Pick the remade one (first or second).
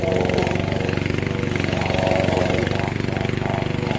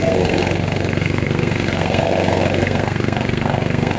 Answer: second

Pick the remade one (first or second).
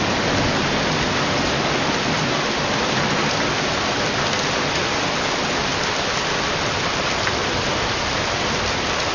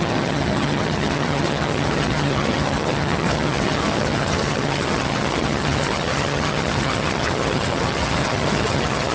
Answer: second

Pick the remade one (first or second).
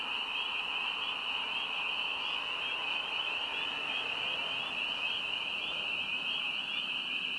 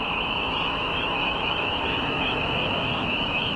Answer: second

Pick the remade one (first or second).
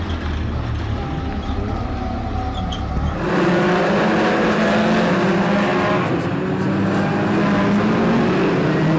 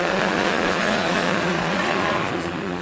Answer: second